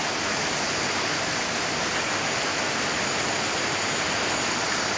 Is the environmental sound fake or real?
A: real